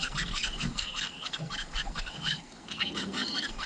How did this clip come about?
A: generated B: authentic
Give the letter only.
A